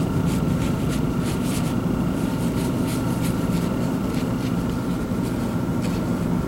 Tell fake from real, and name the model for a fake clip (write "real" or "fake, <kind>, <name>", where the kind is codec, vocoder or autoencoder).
real